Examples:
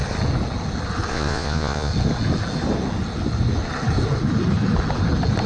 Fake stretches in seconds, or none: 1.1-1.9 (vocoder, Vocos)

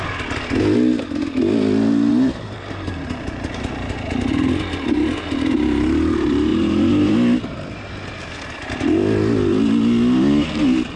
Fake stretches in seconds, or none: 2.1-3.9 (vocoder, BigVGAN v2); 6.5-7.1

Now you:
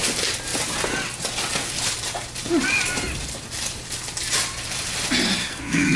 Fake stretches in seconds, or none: 5.4-6.0 (codec, SNAC)

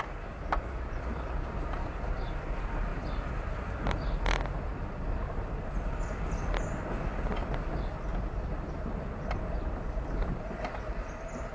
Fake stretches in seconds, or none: 8.1-10.9 (vocoder, BigVGAN v2)

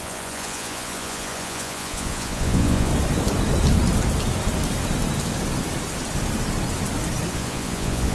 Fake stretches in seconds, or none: 0.0-2.9 (vocoder, Vocos); 7.3-8.1

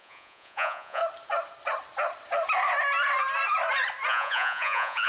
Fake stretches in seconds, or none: 0.0-1.0 (vocoder, Vocos); 4.1-5.1